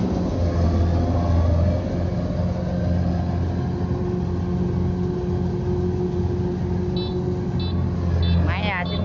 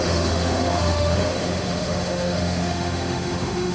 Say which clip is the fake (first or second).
second